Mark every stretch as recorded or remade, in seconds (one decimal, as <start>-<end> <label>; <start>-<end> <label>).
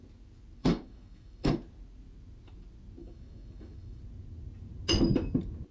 0.0-0.6 recorded; 0.6-1.5 remade; 1.5-3.0 recorded; 3.0-4.0 remade; 4.0-5.7 recorded